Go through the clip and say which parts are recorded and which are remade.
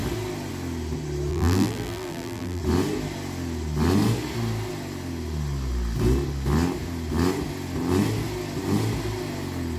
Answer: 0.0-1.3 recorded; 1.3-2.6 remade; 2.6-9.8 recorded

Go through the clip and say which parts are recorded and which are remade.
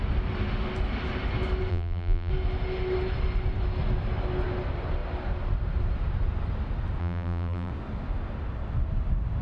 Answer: 0.0-1.7 recorded; 1.7-2.3 remade; 2.3-7.0 recorded; 7.0-7.7 remade; 7.7-9.4 recorded